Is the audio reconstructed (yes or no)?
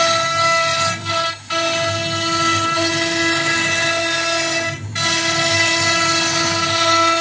no